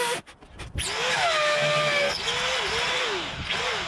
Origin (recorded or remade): recorded